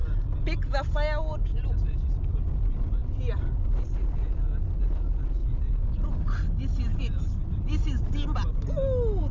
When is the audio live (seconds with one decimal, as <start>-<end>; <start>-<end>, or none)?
0.0-9.3